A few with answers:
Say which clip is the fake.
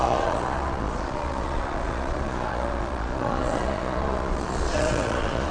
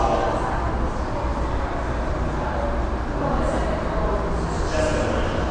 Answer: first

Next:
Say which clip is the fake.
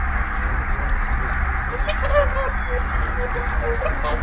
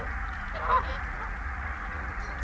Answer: second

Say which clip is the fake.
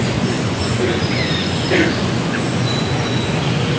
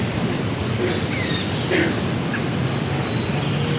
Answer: first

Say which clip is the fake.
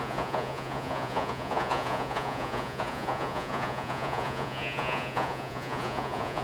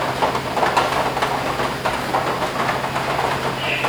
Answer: first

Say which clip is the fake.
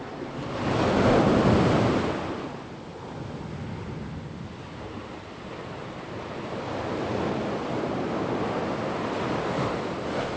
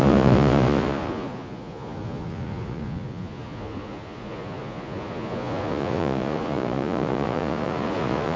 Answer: second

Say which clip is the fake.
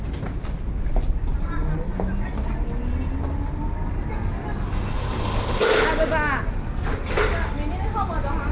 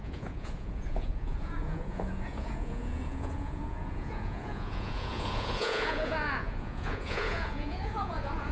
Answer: second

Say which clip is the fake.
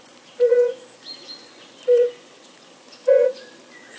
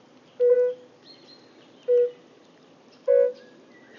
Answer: first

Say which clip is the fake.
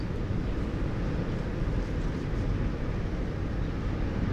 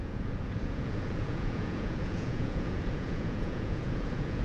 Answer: second